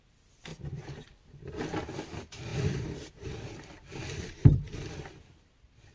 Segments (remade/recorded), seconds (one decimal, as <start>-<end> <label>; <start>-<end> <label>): 0.0-0.5 recorded; 0.5-1.6 remade; 1.6-2.5 recorded; 2.5-5.1 remade; 5.1-5.9 recorded